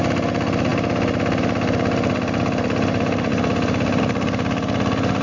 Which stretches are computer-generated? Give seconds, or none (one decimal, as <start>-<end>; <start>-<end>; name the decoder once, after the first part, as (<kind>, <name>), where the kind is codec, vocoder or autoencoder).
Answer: none